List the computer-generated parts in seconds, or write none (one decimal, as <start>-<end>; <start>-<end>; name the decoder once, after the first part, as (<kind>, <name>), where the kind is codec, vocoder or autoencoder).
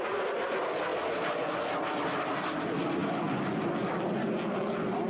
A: none